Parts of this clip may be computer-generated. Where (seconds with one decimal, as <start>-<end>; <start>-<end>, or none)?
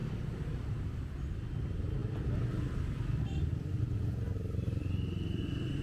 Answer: 0.0-1.1; 2.0-5.8